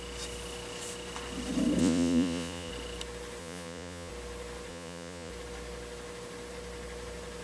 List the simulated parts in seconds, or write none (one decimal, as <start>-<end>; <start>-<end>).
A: 1.8-2.7; 3.4-4.1; 4.7-5.3